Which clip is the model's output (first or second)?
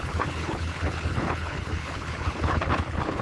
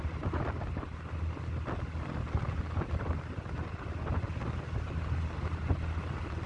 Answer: first